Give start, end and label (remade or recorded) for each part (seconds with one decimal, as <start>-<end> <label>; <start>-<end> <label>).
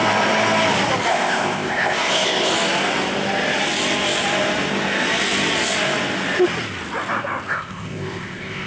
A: 0.0-1.1 recorded; 1.1-2.5 remade; 2.5-7.5 recorded; 7.5-8.7 remade